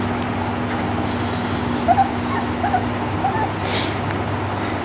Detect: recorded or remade recorded